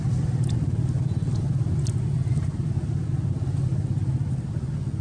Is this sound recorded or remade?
recorded